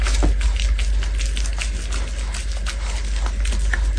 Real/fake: real